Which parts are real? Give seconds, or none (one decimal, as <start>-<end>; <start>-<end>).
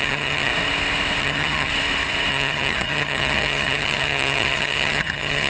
0.5-1.2; 1.7-2.3